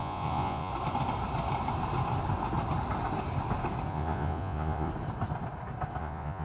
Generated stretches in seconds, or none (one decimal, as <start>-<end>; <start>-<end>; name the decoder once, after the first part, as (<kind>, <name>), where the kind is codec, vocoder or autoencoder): 0.0-0.7 (vocoder, Vocos); 3.9-4.9; 6.0-6.4